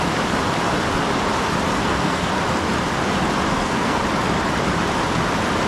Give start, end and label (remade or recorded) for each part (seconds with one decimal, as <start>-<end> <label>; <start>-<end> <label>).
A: 0.0-1.8 recorded; 1.8-2.3 remade; 2.3-3.5 recorded; 3.5-4.0 remade; 4.0-5.7 recorded